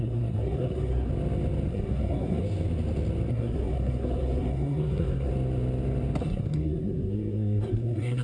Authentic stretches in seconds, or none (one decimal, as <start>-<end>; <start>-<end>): 1.1-1.7; 2.4-3.3; 5.3-6.2